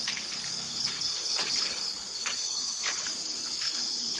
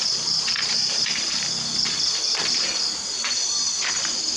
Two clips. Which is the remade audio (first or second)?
first